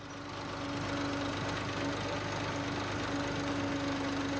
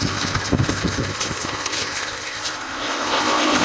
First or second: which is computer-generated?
second